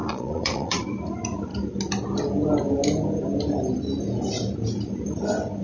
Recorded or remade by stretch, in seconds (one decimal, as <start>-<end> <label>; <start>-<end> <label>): 0.0-0.8 remade; 0.8-5.6 recorded